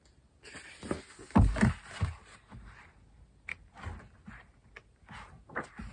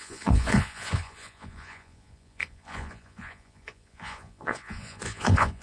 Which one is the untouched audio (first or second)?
first